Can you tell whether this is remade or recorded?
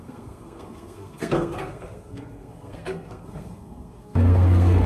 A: remade